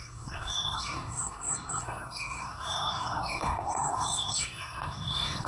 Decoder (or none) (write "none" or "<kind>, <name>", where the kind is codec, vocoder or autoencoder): codec, SNAC